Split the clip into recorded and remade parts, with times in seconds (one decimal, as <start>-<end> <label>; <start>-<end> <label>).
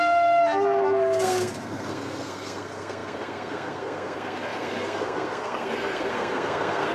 0.0-6.9 remade